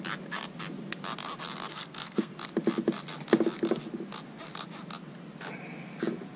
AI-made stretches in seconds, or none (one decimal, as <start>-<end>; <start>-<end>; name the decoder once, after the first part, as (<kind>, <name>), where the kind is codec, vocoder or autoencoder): 1.7-2.3 (codec, SNAC)